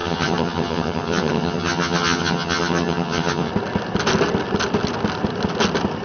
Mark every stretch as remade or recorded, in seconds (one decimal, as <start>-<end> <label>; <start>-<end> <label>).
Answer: 0.0-3.5 remade; 3.5-6.0 recorded